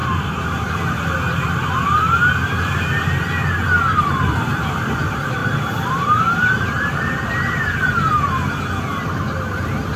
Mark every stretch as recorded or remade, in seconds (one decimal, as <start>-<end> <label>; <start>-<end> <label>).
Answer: 0.0-5.4 recorded; 5.4-8.5 remade; 8.5-10.0 recorded